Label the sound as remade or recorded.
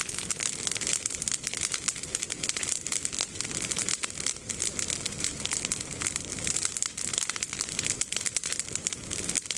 recorded